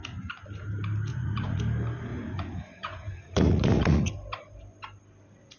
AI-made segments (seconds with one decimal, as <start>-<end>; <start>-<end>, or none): 1.1-1.6; 2.1-4.1